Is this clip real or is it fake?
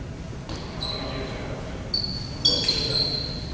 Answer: real